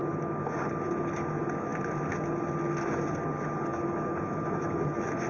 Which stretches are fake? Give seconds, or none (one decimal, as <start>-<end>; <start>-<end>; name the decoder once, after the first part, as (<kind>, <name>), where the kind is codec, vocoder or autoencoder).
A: 3.7-5.3 (autoencoder, DAC-VAE)